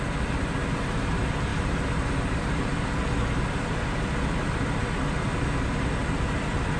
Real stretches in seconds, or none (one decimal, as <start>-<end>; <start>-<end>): 0.0-6.8